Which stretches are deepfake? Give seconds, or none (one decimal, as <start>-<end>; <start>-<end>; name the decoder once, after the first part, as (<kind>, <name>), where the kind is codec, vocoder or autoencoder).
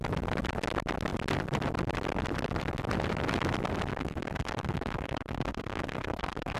3.9-6.6 (codec, SNAC)